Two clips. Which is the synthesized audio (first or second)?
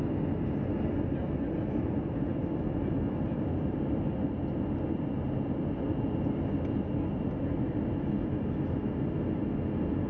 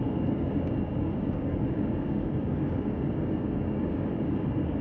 second